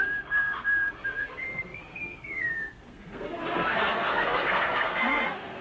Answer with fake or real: fake